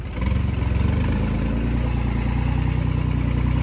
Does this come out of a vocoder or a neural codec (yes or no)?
no